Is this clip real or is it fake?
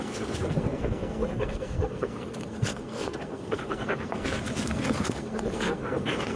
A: fake